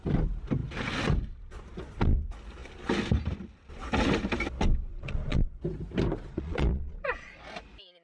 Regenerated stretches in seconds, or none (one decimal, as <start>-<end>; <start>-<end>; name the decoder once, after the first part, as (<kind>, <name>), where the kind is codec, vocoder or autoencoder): 4.9-5.5 (vocoder, Vocos); 6.3-7.3